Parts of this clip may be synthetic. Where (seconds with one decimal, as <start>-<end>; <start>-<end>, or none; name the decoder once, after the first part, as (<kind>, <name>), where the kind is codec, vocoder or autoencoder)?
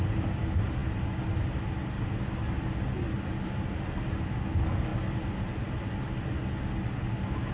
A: none